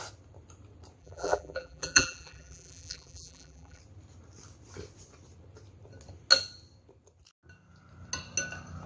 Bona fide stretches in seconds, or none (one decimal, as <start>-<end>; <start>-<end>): 0.0-1.0; 3.8-8.9